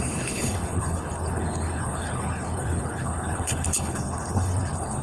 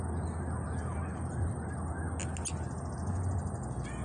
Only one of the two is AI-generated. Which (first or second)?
first